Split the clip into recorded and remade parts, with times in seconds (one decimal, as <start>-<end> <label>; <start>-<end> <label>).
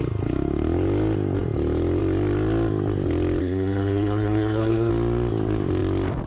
0.0-3.4 recorded; 3.4-4.9 remade; 4.9-6.3 recorded